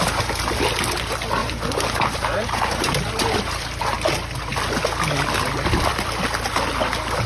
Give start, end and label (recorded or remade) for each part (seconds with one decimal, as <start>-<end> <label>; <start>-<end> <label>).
0.0-1.4 recorded; 1.4-3.8 remade; 3.8-7.3 recorded